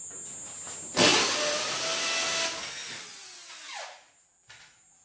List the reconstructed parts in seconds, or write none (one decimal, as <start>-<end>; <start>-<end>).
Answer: none